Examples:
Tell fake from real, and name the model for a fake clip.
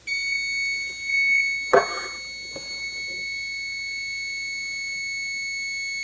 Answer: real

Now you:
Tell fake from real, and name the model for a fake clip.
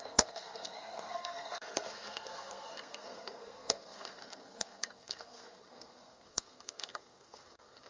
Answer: fake, codec, SNAC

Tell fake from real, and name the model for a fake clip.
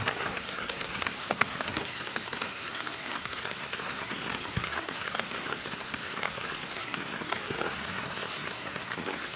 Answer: fake, codec, SNAC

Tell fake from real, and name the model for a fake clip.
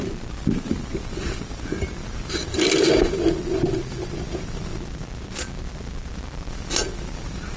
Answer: real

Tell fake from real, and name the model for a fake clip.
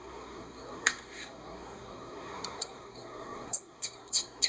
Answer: fake, codec, SNAC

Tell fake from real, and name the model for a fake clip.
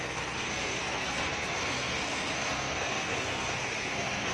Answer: fake, codec, SNAC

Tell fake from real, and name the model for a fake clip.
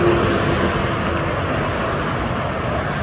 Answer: real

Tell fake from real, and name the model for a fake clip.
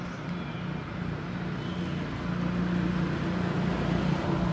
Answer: real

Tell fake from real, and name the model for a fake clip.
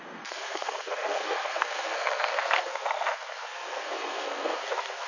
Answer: fake, codec, SNAC